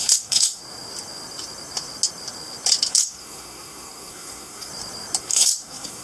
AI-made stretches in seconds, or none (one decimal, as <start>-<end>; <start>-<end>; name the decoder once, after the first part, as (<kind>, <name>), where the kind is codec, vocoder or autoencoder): 0.0-0.6 (codec, SNAC); 2.9-4.7; 5.2-6.0